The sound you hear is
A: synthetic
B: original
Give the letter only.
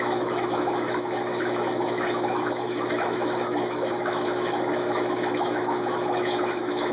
A